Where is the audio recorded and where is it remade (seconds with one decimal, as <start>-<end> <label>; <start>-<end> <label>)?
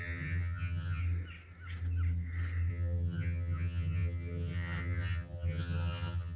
0.0-1.0 remade; 1.0-2.7 recorded; 2.7-6.4 remade